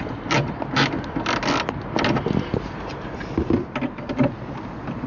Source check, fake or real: real